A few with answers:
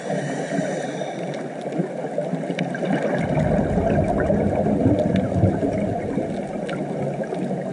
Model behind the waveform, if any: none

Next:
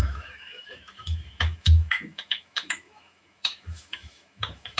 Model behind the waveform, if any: autoencoder, DAC-VAE